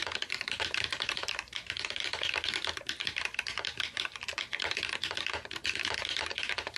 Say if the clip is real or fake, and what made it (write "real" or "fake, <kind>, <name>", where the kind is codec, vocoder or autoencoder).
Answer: fake, vocoder, BigVGAN v2